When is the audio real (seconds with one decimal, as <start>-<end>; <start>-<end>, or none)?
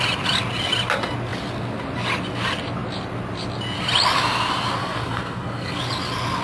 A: 0.0-4.8; 5.8-6.4